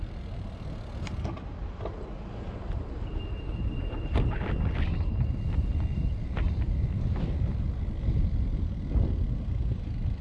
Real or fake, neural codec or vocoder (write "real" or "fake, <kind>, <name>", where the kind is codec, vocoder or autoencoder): real